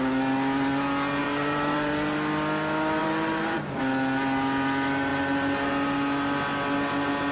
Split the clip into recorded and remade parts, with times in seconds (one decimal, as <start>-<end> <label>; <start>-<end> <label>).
0.0-1.2 recorded; 1.2-1.9 remade; 1.9-3.0 recorded; 3.0-3.8 remade; 3.8-7.3 recorded